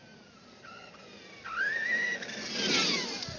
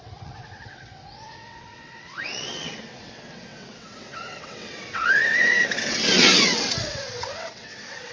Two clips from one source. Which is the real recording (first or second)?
first